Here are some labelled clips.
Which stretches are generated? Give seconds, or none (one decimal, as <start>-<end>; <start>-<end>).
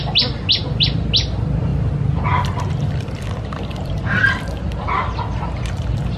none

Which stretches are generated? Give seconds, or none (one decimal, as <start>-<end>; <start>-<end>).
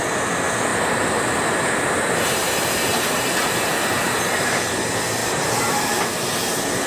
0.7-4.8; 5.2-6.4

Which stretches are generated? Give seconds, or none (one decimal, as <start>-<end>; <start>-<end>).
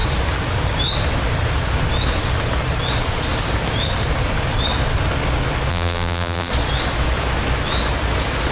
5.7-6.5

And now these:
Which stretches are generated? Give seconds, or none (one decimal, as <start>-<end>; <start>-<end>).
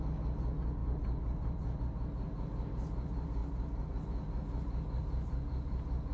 0.8-1.8; 3.4-3.9; 5.0-6.1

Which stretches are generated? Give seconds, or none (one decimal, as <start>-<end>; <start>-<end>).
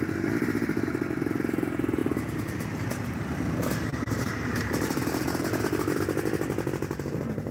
none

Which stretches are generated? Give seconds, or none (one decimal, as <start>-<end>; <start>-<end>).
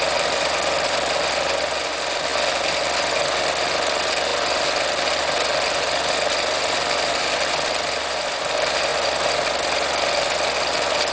none